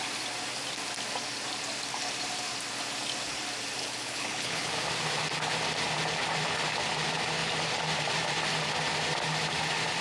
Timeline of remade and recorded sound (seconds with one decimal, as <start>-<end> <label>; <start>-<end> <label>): 0.0-3.8 recorded; 3.8-4.7 remade; 4.7-10.0 recorded